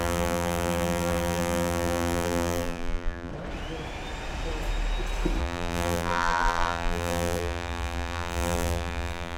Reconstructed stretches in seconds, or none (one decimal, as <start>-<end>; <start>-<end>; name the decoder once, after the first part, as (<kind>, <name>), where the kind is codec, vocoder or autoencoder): 0.0-3.3 (vocoder, BigVGAN v2); 5.4-9.4